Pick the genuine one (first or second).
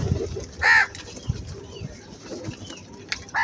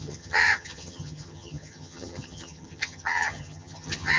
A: first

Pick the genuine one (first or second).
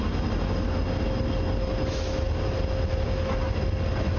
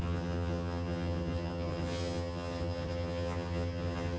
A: first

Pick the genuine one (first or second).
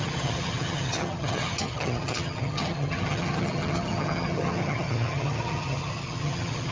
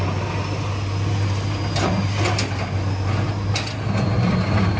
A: second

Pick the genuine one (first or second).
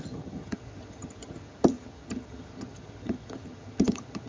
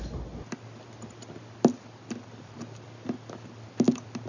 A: second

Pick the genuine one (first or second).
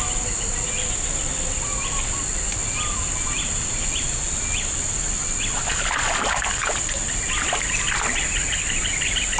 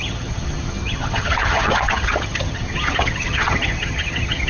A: first